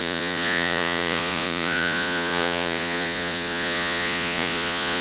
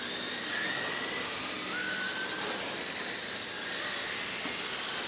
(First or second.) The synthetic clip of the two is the first